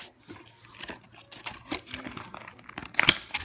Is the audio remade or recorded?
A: recorded